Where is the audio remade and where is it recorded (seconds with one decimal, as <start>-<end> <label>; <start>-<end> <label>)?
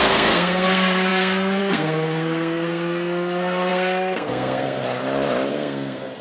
0.0-4.8 remade; 4.8-5.5 recorded; 5.5-6.2 remade